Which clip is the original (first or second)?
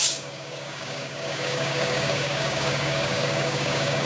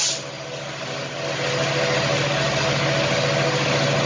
second